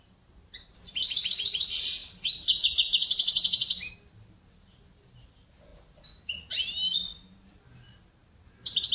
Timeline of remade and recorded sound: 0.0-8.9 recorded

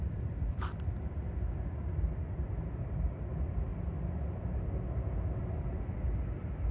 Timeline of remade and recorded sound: 0.0-6.7 recorded

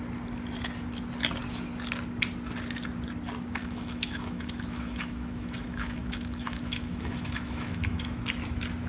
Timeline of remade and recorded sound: 0.0-3.6 recorded; 3.6-8.2 remade; 8.2-8.9 recorded

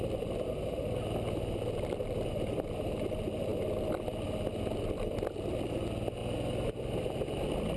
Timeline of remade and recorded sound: 0.0-6.2 remade; 6.2-6.7 recorded; 6.7-7.8 remade

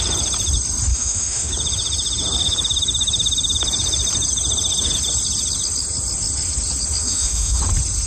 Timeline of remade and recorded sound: 0.0-0.9 recorded; 0.9-1.5 remade; 1.5-7.0 recorded; 7.0-7.6 remade; 7.6-8.1 recorded

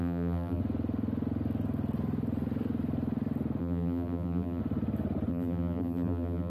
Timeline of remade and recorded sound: 0.0-0.6 remade; 0.6-3.6 recorded; 3.6-4.6 remade; 4.6-5.3 recorded; 5.3-6.5 remade